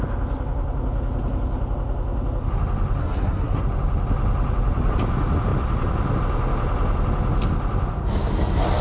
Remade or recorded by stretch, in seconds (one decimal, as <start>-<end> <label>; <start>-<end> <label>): 0.0-3.0 recorded; 3.0-3.6 remade; 3.6-8.8 recorded